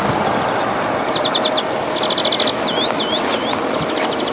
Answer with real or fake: real